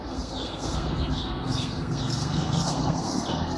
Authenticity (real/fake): fake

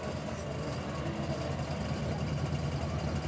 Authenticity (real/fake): real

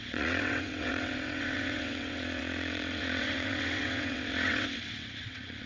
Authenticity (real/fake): fake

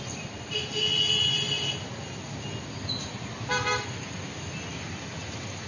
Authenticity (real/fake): real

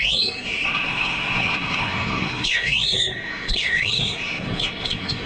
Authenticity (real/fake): fake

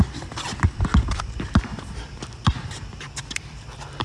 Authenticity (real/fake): fake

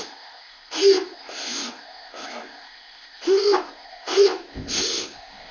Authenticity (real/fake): fake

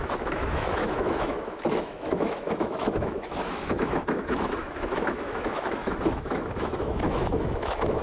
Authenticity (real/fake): fake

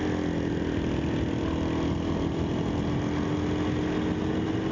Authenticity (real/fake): real